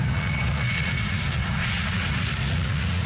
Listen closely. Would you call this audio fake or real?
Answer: fake